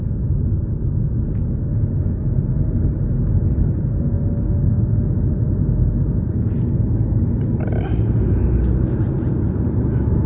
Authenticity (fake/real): real